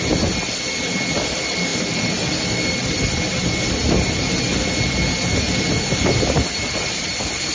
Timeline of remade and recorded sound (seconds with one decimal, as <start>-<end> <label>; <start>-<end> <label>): 0.0-7.5 recorded